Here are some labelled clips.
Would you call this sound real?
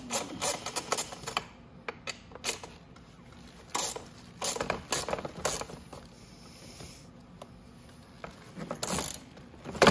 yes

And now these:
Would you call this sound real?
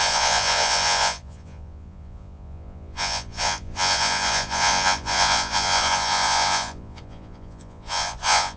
no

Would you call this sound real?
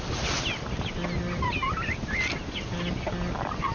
yes